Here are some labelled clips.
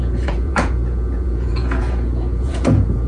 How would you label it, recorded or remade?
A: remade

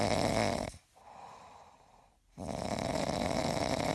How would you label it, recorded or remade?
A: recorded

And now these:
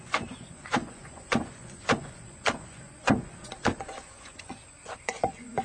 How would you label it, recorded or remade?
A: remade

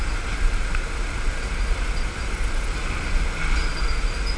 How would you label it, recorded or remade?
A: recorded